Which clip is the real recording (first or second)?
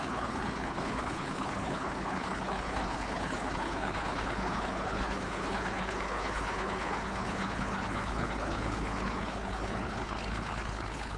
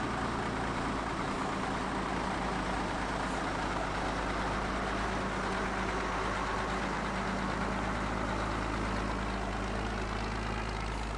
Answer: second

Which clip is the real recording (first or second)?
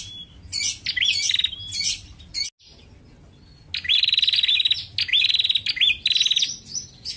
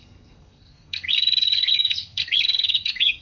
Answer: first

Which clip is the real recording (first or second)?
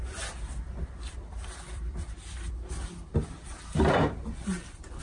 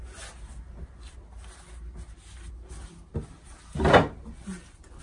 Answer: second